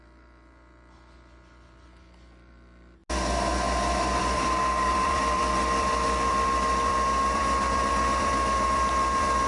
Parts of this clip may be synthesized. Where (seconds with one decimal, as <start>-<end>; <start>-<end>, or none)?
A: 0.0-3.0; 4.2-9.5